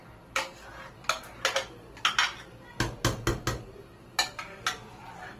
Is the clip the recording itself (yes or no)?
yes